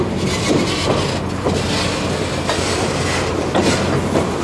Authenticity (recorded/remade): recorded